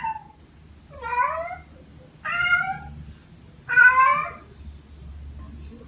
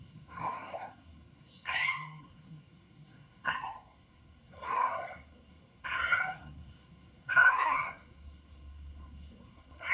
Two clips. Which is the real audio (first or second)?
first